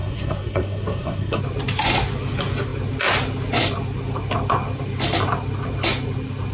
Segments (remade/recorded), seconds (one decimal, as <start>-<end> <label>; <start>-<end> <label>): 0.0-1.4 remade; 1.4-6.5 recorded

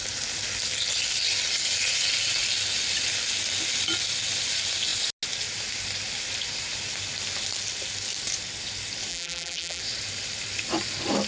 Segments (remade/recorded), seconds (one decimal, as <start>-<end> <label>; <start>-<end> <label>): 0.0-9.1 recorded; 9.1-9.8 remade; 9.8-11.3 recorded

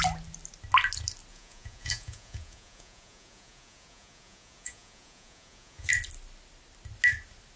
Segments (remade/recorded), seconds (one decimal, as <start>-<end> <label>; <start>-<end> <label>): 0.0-1.3 recorded; 1.3-5.9 remade; 5.9-7.6 recorded

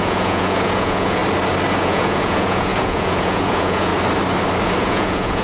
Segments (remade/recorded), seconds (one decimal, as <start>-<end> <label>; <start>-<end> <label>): 0.0-1.2 remade; 1.2-1.8 recorded; 1.8-3.9 remade; 3.9-4.8 recorded; 4.8-5.4 remade

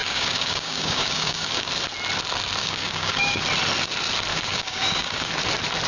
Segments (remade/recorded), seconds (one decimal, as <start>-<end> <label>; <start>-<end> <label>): 0.0-1.7 remade; 1.7-2.6 recorded; 2.6-3.4 remade; 3.4-4.3 recorded; 4.3-5.3 remade; 5.3-5.9 recorded

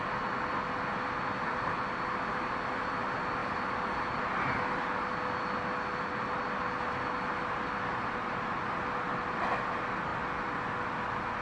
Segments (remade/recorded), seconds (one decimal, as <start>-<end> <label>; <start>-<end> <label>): 0.0-11.4 recorded